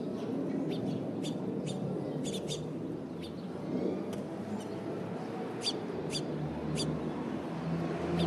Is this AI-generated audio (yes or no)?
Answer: no